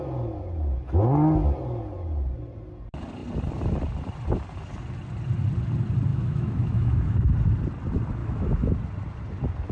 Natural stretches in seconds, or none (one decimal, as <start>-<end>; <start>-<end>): 0.0-6.1; 7.3-8.2; 8.7-9.7